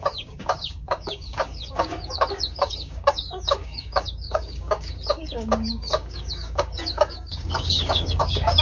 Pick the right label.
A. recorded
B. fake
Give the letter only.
B